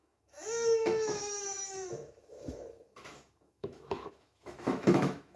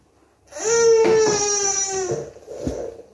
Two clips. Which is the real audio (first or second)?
second